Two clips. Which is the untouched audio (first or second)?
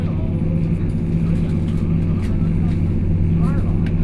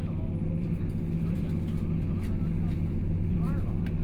first